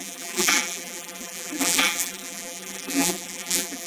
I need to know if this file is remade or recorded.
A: remade